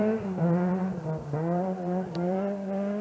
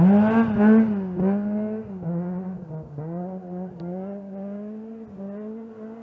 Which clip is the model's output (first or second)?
first